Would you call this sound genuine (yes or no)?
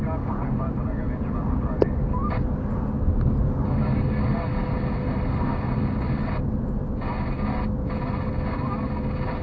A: yes